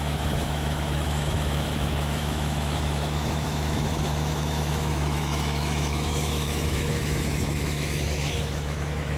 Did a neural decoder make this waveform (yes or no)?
yes